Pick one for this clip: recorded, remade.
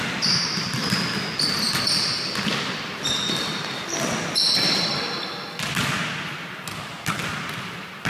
recorded